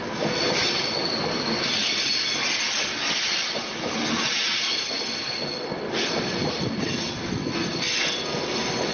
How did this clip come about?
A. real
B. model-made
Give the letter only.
A